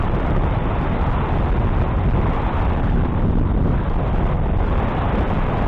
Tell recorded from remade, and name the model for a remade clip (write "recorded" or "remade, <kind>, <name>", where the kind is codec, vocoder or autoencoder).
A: recorded